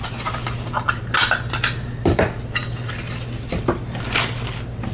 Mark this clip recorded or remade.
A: recorded